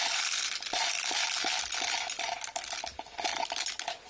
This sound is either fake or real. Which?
real